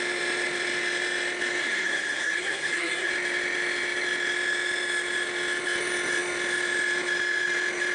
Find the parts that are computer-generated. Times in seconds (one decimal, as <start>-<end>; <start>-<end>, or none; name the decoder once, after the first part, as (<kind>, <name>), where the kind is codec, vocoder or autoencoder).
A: 1.6-3.1 (codec, SNAC)